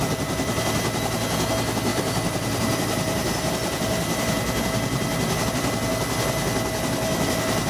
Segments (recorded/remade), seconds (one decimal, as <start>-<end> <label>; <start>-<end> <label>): 0.0-1.9 recorded; 1.9-5.5 remade; 5.5-7.7 recorded